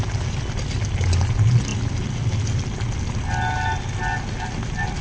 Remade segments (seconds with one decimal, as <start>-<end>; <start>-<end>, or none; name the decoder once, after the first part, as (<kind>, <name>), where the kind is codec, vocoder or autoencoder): none

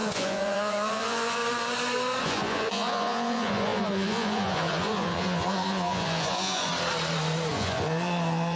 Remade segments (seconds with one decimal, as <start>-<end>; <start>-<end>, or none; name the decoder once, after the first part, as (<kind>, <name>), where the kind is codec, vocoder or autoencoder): 0.0-1.4 (vocoder, Vocos); 2.2-6.7; 7.5-8.6

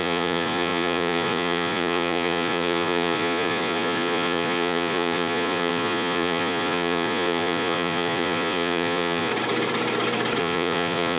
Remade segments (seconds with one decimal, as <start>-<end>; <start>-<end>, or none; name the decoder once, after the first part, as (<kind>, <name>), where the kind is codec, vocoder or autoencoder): 0.0-9.3 (vocoder, Vocos); 10.4-11.2

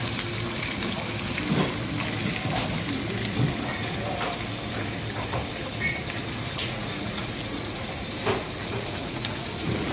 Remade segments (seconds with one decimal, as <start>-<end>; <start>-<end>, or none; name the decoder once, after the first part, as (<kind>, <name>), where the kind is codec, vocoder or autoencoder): 6.6-7.9 (vocoder, Vocos); 8.6-9.9

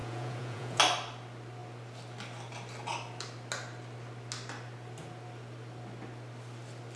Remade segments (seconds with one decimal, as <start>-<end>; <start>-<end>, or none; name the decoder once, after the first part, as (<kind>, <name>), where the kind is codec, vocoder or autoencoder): 0.0-0.8 (vocoder, Vocos)

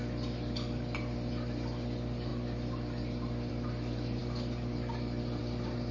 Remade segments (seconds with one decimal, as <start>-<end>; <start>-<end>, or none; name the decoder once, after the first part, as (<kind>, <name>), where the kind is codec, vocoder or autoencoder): none